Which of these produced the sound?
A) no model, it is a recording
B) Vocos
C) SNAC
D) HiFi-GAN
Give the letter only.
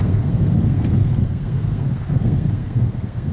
C